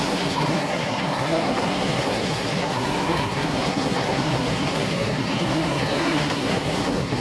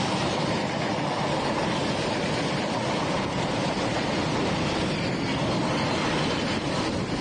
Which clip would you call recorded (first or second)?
second